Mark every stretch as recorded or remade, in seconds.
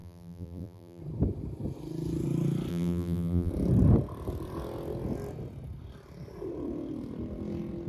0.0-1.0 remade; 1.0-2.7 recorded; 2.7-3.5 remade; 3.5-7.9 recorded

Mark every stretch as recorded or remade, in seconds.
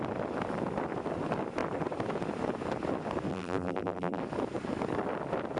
0.0-3.3 recorded; 3.3-4.2 remade; 4.2-5.6 recorded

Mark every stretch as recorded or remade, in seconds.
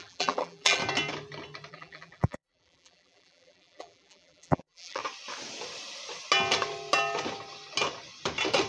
0.0-0.8 remade; 0.8-1.7 recorded; 1.7-5.0 remade; 5.0-8.7 recorded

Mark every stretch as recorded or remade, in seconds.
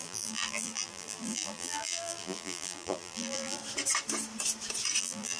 0.0-3.6 remade; 3.6-5.0 recorded; 5.0-5.4 remade